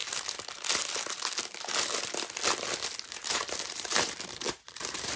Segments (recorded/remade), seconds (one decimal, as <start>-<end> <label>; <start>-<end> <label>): 0.0-3.1 recorded; 3.1-5.2 remade